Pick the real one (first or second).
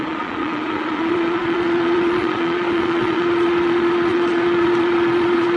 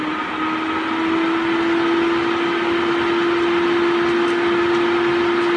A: second